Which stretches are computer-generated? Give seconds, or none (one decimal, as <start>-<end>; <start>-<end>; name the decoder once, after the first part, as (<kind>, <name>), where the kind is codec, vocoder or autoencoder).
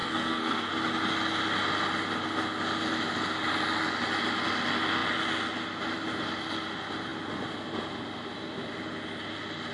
0.0-0.7 (codec, SNAC)